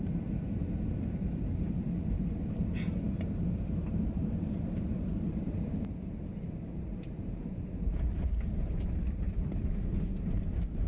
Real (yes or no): no